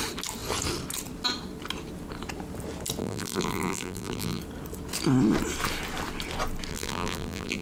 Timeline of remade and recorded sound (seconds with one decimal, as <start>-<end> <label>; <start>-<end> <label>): 0.0-3.0 recorded; 3.0-4.4 remade; 4.4-6.7 recorded; 6.7-7.6 remade